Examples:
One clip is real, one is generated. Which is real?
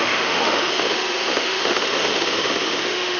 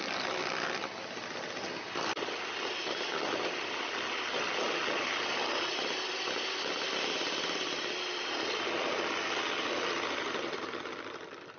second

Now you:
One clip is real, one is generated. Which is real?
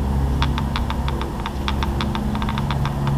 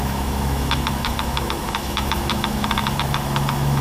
first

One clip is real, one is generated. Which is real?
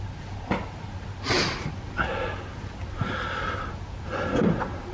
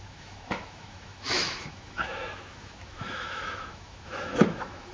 first